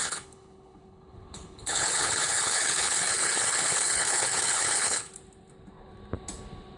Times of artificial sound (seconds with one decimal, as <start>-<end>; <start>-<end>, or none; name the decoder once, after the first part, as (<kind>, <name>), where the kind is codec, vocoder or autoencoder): 0.0-5.1 (codec, HILCodec)

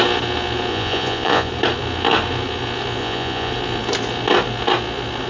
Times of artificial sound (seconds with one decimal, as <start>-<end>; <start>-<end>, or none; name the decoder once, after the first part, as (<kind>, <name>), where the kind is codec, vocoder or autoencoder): 0.7-1.5 (vocoder, Vocos); 3.0-3.5

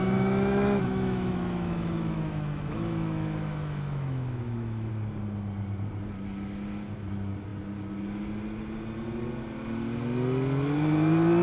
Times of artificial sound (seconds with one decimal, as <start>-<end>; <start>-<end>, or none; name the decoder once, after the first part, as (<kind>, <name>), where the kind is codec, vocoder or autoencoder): 0.0-4.9 (autoencoder, DAC-VAE)

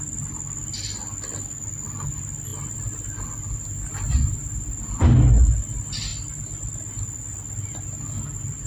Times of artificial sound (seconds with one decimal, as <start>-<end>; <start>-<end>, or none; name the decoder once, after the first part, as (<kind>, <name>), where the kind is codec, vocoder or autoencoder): none

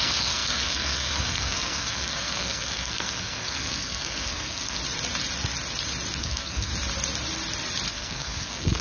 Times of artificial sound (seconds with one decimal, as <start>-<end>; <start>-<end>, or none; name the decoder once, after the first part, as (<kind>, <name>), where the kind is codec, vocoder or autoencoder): 0.0-4.8 (codec, SNAC); 6.2-6.7; 7.9-8.8

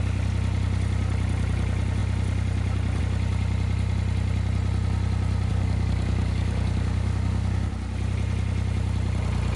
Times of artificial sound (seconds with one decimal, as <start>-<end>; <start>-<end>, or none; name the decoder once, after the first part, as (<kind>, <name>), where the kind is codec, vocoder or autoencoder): 5.5-7.7 (codec, DAC)